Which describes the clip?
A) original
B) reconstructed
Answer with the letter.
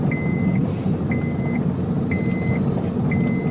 A